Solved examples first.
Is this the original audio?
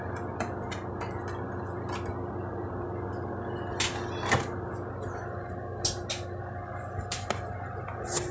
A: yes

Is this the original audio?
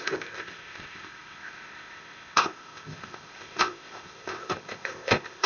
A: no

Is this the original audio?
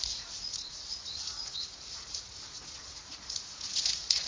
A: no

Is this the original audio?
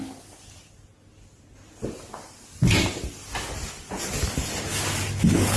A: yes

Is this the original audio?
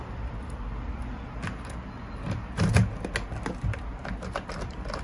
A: yes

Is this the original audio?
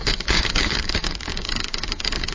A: no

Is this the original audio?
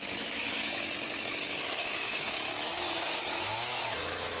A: no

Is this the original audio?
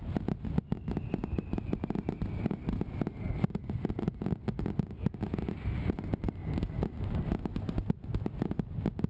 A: yes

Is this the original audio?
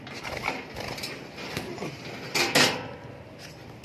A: yes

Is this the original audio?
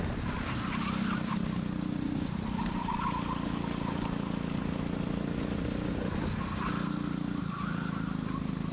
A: yes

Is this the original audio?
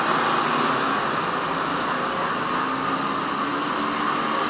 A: yes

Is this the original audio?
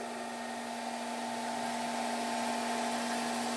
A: yes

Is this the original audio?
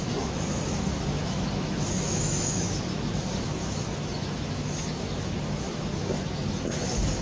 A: no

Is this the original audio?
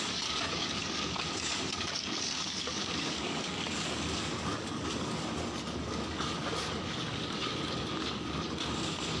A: no